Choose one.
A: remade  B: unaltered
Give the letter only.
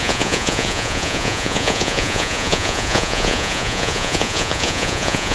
A